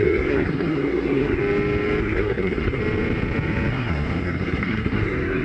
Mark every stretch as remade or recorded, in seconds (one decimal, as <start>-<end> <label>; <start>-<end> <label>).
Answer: 0.0-1.4 remade; 1.4-2.0 recorded; 2.0-2.8 remade; 2.8-3.7 recorded; 3.7-5.4 remade